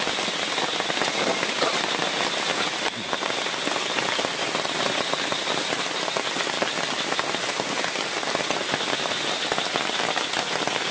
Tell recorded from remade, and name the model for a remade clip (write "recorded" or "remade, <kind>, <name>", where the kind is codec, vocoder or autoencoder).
recorded